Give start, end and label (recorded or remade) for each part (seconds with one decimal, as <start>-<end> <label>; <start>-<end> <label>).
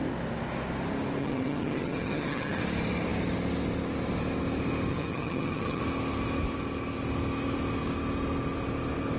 0.0-1.2 recorded; 1.2-2.6 remade; 2.6-4.9 recorded; 4.9-5.8 remade; 5.8-9.2 recorded